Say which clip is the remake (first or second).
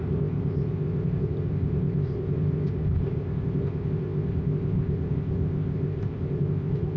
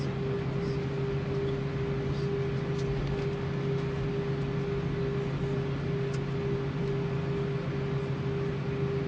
first